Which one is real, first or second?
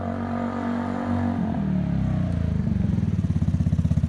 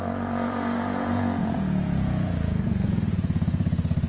first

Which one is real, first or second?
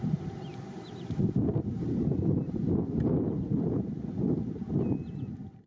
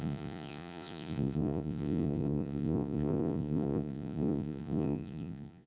first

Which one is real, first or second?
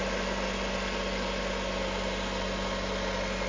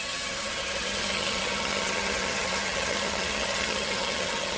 first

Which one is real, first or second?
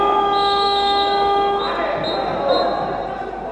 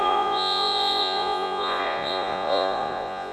first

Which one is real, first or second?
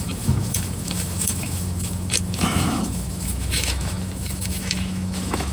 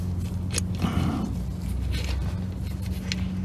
second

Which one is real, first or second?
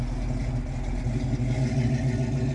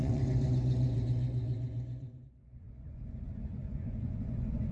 first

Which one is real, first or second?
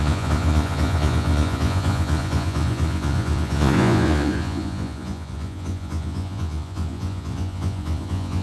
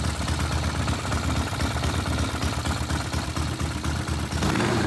second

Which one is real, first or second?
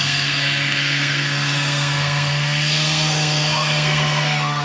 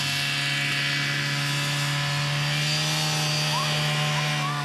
second